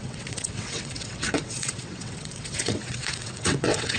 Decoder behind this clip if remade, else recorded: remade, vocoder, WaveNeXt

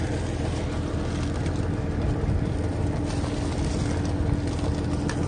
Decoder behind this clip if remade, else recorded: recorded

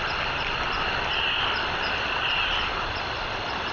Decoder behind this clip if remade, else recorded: recorded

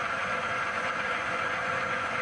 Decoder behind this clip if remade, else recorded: remade, vocoder, Vocos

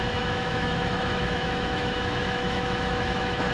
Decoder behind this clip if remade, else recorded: remade, autoencoder, DAC-VAE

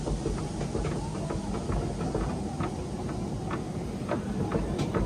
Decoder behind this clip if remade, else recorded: recorded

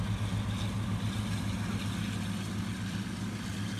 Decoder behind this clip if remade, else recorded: recorded